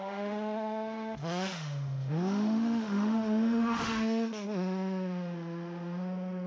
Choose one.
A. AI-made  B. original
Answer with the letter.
A